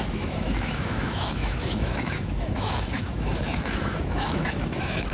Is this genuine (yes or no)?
no